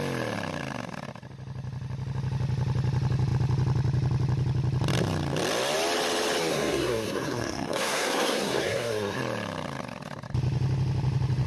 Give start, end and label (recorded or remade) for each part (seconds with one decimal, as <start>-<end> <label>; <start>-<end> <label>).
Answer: 0.0-6.5 recorded; 6.5-9.2 remade; 9.2-11.5 recorded